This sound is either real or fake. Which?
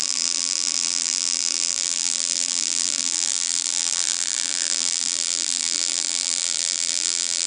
fake